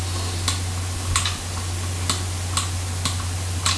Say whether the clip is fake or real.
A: real